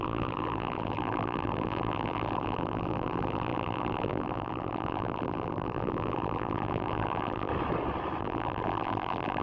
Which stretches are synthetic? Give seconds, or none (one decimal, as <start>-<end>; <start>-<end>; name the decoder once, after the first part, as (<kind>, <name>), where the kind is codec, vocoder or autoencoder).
0.0-7.5 (vocoder, BigVGAN v2); 8.2-9.4